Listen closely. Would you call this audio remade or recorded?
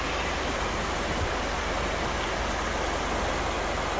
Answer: recorded